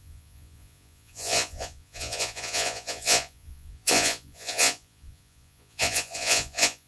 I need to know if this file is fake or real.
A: fake